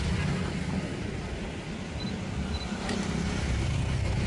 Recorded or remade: recorded